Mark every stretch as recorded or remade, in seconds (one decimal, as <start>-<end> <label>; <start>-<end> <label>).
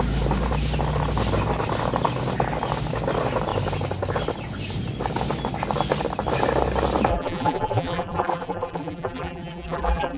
0.0-7.1 recorded; 7.1-10.2 remade